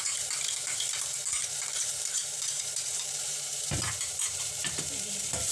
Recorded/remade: remade